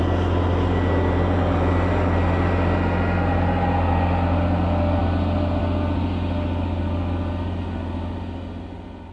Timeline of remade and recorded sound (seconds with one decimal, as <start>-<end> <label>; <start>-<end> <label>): 0.0-9.1 recorded